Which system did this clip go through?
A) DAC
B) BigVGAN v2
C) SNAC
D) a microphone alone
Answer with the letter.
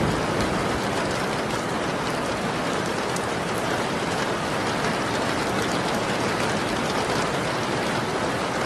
D